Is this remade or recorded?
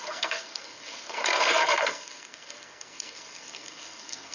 remade